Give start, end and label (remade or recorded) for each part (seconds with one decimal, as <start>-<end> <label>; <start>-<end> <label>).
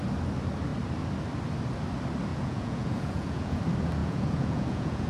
0.0-2.3 recorded; 2.3-3.6 remade; 3.6-4.0 recorded; 4.0-5.1 remade